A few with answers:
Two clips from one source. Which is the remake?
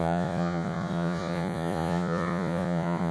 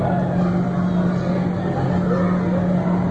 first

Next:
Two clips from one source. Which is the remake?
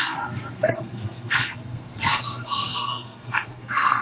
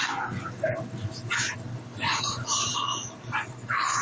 first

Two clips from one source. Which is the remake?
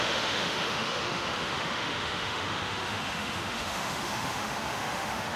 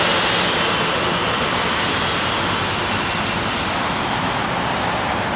first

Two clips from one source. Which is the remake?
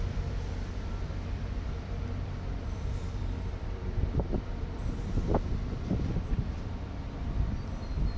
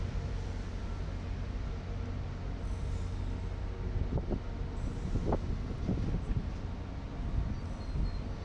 first